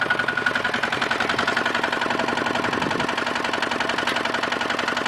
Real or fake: real